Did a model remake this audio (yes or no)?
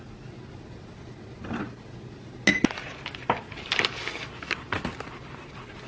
no